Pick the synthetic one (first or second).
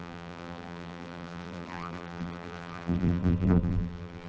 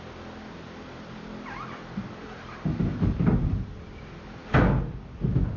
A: first